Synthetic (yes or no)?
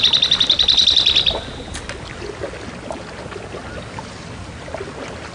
no